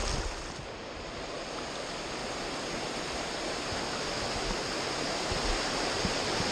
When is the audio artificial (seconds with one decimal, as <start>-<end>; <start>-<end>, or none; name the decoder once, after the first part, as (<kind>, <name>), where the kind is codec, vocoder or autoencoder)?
none